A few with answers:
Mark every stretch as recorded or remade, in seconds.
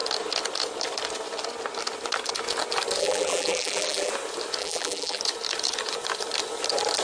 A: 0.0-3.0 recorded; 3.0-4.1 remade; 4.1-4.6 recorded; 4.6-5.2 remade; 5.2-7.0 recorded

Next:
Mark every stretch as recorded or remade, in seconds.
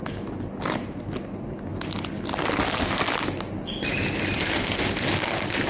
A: 0.0-5.7 recorded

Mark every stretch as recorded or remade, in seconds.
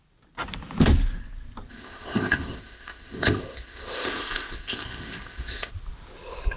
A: 0.0-1.7 recorded; 1.7-5.7 remade; 5.7-6.6 recorded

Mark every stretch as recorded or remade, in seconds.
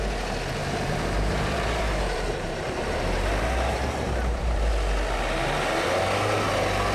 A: 0.0-0.6 recorded; 0.6-4.7 remade; 4.7-6.9 recorded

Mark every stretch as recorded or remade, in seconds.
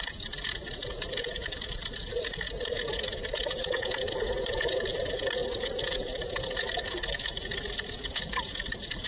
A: 0.0-9.1 recorded